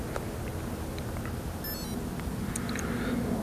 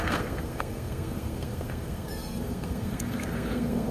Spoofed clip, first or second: second